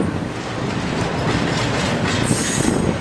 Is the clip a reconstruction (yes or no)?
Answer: no